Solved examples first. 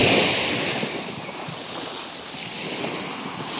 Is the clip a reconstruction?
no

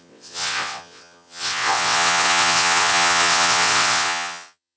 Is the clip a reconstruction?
yes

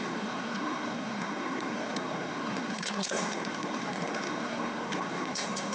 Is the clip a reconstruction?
yes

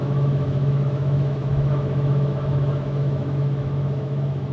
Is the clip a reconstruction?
yes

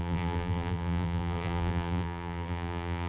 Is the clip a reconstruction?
yes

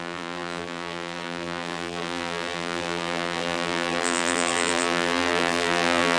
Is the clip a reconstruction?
yes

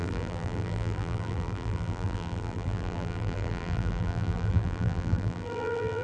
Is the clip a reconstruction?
yes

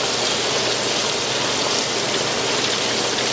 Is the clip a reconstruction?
no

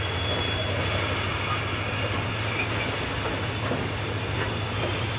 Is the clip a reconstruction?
no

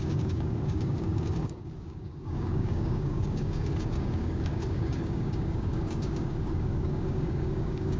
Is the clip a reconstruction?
yes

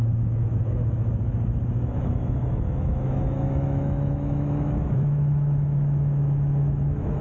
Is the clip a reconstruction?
yes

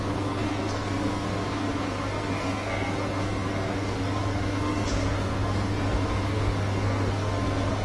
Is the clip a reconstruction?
yes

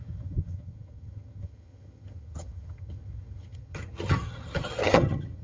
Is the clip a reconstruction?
yes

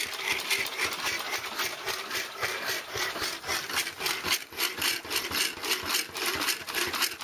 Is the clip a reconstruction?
no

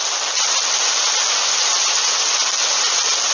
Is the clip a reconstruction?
no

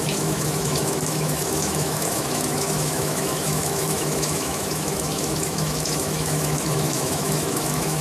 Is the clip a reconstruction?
yes